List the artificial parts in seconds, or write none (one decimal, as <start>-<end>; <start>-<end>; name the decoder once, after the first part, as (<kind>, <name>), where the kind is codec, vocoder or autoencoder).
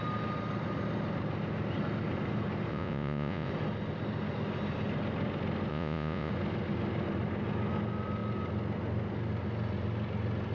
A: 2.7-3.5 (vocoder, Vocos); 5.7-6.3